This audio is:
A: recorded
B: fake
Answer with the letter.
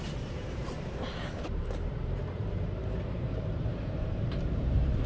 B